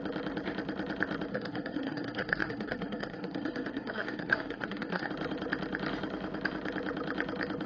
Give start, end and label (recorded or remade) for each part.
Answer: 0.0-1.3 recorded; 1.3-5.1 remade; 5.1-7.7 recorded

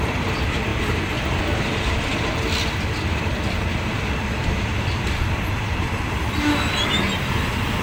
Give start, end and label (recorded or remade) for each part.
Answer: 0.0-7.8 recorded

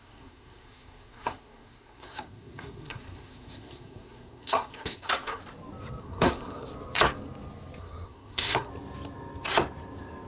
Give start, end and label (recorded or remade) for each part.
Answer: 0.0-5.4 remade; 5.4-6.0 recorded; 6.0-6.7 remade; 6.7-7.8 recorded; 7.8-8.7 remade; 8.7-10.3 recorded

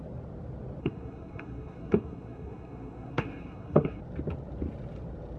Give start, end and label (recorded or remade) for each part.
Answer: 0.0-0.8 recorded; 0.8-4.0 remade; 4.0-5.4 recorded

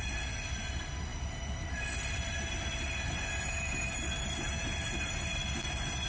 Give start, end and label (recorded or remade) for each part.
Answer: 0.0-6.1 recorded

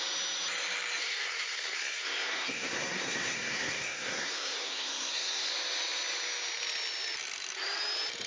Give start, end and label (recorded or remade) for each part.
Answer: 0.0-1.0 recorded; 1.0-5.5 remade; 5.5-8.3 recorded

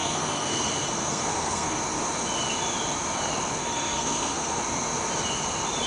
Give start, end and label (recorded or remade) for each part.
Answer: 0.0-1.8 remade; 1.8-3.6 recorded; 3.6-4.6 remade; 4.6-5.9 recorded

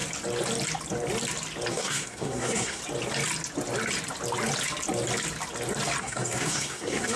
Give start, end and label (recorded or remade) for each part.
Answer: 0.0-1.7 recorded; 1.7-2.8 remade; 2.8-6.0 recorded; 6.0-7.2 remade